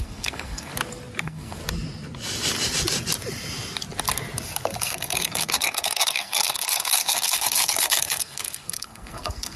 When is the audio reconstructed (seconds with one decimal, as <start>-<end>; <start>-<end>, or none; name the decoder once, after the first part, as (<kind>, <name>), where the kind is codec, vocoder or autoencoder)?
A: 0.0-0.7 (codec, SNAC); 1.2-1.6; 4.8-9.6